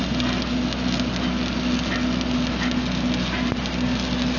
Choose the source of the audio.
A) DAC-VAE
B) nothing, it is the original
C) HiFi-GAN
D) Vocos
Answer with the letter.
B